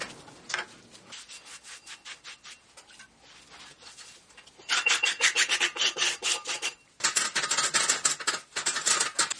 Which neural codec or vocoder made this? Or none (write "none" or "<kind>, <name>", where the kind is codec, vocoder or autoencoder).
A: none